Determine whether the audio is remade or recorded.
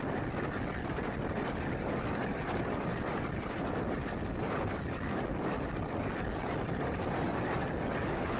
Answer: recorded